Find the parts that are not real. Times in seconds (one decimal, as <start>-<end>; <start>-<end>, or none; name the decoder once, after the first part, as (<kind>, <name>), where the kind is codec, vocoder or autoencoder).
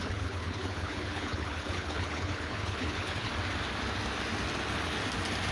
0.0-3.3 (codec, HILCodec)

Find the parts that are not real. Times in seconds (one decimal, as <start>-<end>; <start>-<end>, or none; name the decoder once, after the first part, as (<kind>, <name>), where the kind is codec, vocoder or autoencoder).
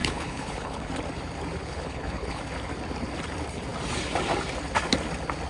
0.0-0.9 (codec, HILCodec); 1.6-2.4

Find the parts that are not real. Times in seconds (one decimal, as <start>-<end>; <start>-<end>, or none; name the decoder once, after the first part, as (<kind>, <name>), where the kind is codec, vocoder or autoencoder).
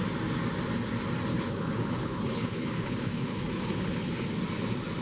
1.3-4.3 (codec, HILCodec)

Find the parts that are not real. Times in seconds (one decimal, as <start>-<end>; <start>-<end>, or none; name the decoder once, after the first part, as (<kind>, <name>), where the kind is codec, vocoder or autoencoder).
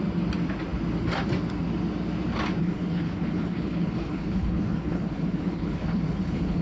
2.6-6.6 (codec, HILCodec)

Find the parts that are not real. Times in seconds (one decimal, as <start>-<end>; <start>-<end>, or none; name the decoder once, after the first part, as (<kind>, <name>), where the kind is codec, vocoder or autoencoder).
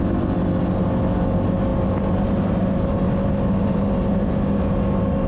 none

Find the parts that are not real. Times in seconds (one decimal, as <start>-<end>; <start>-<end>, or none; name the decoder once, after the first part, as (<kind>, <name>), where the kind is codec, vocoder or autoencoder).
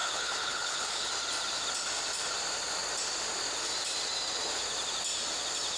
0.0-1.1 (codec, HILCodec)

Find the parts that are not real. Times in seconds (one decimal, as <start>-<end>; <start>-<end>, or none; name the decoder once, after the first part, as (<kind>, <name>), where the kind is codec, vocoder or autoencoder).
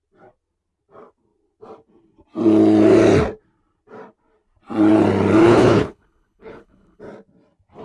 5.4-7.0 (codec, HILCodec)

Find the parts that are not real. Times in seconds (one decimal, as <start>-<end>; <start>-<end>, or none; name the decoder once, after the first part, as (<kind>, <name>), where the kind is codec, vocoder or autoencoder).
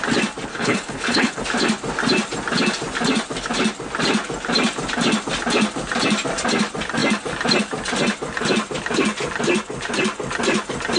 0.5-1.4 (codec, HILCodec)